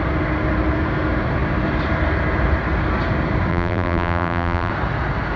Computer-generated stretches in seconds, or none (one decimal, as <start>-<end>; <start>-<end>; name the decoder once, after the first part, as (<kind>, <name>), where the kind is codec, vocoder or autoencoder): 3.5-4.7 (vocoder, BigVGAN v2)